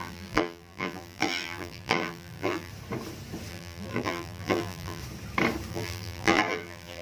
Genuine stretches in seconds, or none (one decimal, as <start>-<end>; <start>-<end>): 2.7-3.5; 5.0-5.7